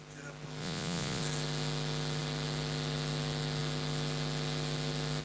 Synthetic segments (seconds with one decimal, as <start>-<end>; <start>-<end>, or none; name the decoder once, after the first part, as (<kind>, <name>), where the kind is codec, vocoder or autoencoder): 0.6-1.2 (vocoder, Vocos)